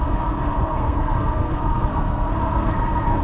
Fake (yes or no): yes